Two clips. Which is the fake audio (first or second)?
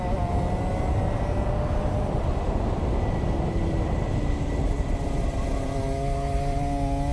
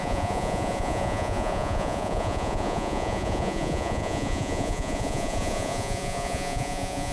second